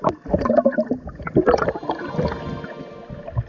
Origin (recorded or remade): recorded